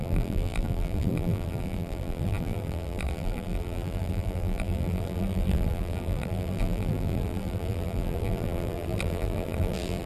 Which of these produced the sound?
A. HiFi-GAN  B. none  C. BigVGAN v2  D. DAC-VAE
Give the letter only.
C